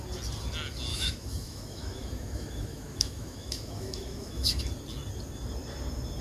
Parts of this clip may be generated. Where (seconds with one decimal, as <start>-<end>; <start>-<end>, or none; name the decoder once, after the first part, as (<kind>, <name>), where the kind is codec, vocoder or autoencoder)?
0.9-4.6 (autoencoder, DAC-VAE)